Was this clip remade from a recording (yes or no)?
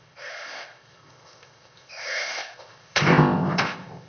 yes